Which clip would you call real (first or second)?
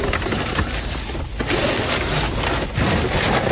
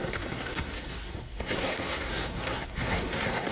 first